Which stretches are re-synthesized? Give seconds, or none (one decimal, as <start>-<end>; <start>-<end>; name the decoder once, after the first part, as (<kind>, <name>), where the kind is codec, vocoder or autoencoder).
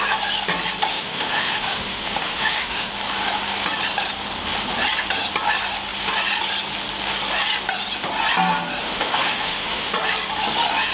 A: 0.9-2.9 (autoencoder, DAC-VAE); 8.8-9.9